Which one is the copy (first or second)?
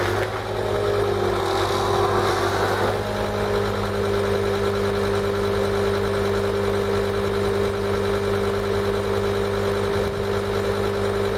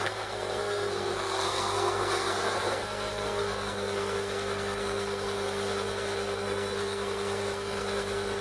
second